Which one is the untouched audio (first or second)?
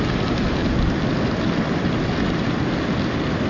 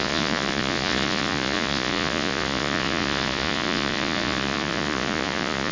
first